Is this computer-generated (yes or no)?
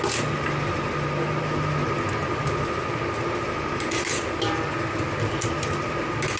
no